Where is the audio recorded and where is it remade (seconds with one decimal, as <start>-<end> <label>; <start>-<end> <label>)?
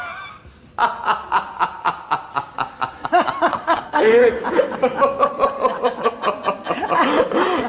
0.0-3.5 recorded; 3.5-4.3 remade; 4.3-7.7 recorded